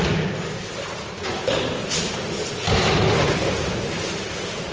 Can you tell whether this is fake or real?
real